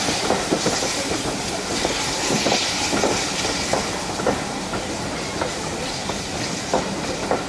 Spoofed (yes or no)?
no